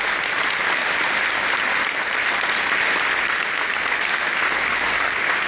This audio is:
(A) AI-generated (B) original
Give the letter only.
B